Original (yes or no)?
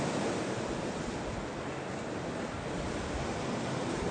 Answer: yes